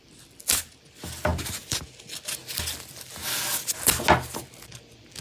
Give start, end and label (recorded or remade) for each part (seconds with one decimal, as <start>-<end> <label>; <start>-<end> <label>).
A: 0.0-1.3 recorded; 1.3-1.8 remade; 1.8-5.2 recorded